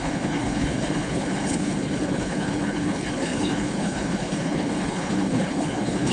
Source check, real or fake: fake